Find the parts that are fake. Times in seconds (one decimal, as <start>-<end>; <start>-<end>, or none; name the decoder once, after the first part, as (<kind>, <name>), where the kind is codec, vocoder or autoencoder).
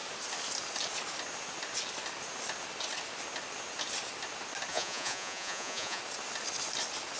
4.7-6.0 (vocoder, Vocos)